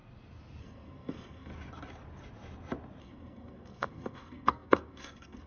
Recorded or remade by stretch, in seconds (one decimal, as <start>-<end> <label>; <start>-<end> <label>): 0.0-0.6 recorded; 0.6-1.5 remade; 1.5-3.0 recorded; 3.0-5.5 remade